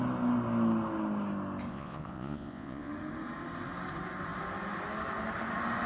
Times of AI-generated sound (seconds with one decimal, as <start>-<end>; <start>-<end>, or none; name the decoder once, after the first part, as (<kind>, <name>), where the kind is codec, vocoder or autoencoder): 1.7-2.9 (vocoder, Vocos)